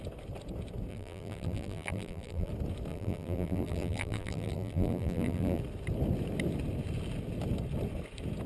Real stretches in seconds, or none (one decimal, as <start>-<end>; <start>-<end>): 0.0-0.9; 2.5-2.9; 5.6-8.5